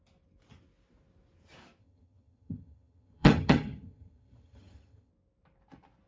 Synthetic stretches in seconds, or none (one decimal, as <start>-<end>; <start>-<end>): 1.8-5.1